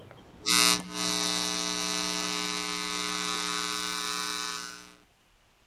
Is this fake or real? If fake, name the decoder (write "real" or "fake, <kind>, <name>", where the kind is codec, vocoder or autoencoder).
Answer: real